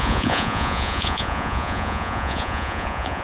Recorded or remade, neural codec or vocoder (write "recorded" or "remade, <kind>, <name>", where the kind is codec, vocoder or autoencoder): remade, vocoder, Vocos